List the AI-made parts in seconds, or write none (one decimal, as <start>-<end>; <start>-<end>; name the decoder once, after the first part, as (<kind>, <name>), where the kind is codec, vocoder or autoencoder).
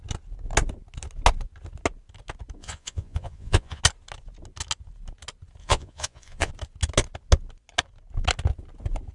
2.6-3.8 (vocoder, Vocos); 5.6-6.5